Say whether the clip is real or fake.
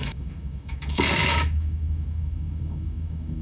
fake